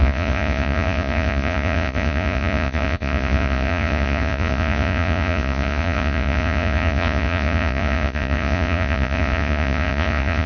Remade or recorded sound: remade